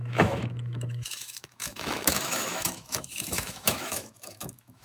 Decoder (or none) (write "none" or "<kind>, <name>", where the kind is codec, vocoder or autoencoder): autoencoder, DAC-VAE